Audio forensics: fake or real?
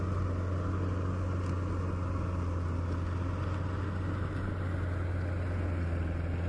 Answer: real